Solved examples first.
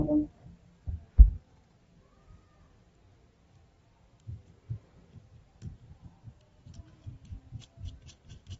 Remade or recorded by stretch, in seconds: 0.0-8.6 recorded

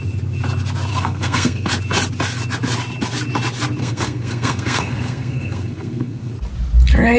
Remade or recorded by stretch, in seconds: 0.0-0.9 recorded; 0.9-1.7 remade; 1.7-3.8 recorded; 3.8-6.3 remade; 6.3-7.2 recorded

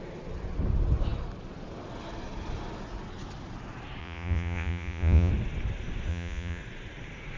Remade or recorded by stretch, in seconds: 0.0-4.0 recorded; 4.0-5.3 remade; 5.3-6.1 recorded; 6.1-6.6 remade; 6.6-7.4 recorded

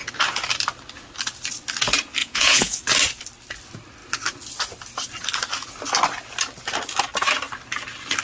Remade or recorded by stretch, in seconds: 0.0-2.2 recorded; 2.2-2.8 remade; 2.8-8.2 recorded

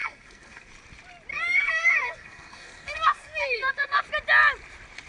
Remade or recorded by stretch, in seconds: 0.0-0.7 remade; 0.7-1.3 recorded; 1.3-4.0 remade; 4.0-5.1 recorded

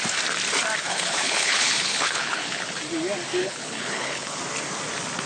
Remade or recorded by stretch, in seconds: 0.0-0.8 recorded; 0.8-2.8 remade; 2.8-3.4 recorded; 3.4-4.4 remade; 4.4-5.3 recorded